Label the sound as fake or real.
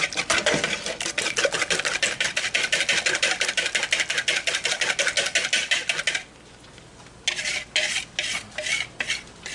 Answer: real